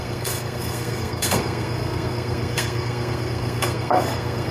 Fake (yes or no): yes